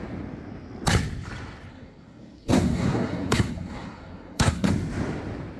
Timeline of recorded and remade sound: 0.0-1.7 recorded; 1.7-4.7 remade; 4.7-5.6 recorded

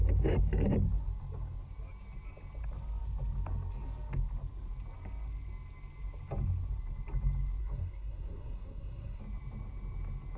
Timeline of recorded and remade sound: 0.0-7.6 recorded; 7.6-9.2 remade; 9.2-10.4 recorded

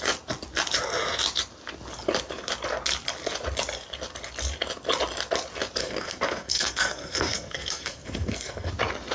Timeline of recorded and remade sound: 0.0-5.8 recorded; 5.8-8.7 remade; 8.7-9.1 recorded

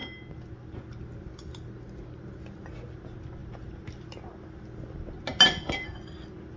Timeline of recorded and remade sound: 0.0-6.6 recorded

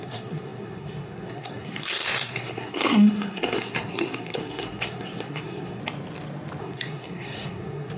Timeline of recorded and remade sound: 0.0-5.8 remade; 5.8-6.6 recorded; 6.6-8.0 remade